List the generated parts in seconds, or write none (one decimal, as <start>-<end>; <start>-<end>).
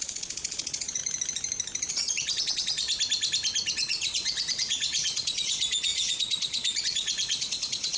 0.0-1.0; 1.9-2.9; 3.7-8.0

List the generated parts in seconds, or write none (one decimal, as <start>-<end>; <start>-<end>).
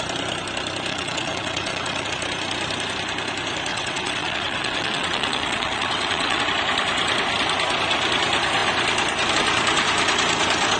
0.9-2.1; 3.7-6.4